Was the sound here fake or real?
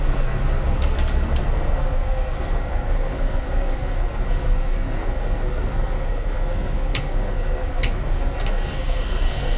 fake